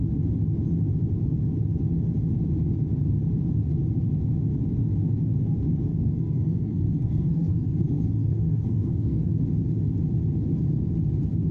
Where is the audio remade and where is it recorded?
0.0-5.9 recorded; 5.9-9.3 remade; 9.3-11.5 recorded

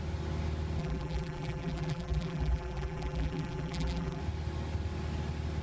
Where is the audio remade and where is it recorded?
0.0-0.8 recorded; 0.8-4.2 remade; 4.2-5.6 recorded

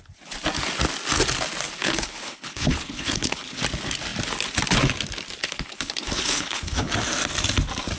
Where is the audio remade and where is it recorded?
0.0-1.8 recorded; 1.8-3.6 remade; 3.6-5.4 recorded; 5.4-6.9 remade; 6.9-8.0 recorded

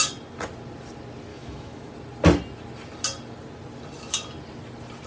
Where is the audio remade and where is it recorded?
0.0-1.3 recorded; 1.3-1.9 remade; 1.9-5.1 recorded

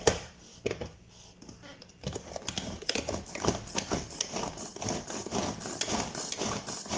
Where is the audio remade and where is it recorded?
0.0-0.5 recorded; 0.5-3.7 remade; 3.7-7.0 recorded

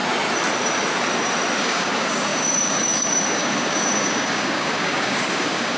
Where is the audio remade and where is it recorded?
0.0-1.6 recorded; 1.6-5.8 remade

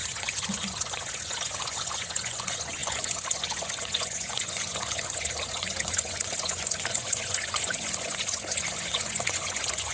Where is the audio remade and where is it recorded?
0.0-9.9 remade